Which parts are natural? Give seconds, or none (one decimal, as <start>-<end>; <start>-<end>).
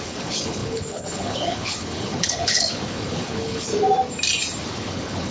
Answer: 3.7-4.7